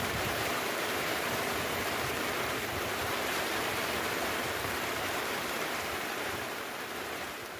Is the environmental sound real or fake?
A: fake